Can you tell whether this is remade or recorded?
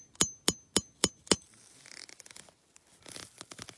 recorded